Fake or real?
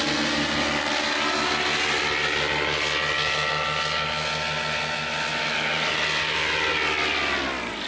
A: real